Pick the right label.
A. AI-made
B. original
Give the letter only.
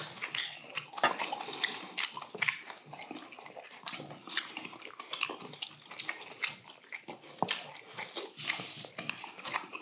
B